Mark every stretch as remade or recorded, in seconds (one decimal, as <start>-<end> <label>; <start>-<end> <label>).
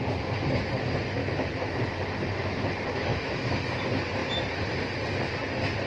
0.0-1.2 recorded; 1.2-1.8 remade; 1.8-3.1 recorded; 3.1-3.7 remade; 3.7-5.9 recorded